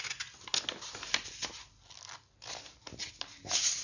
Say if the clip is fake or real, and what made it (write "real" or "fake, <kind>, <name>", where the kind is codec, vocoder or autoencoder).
real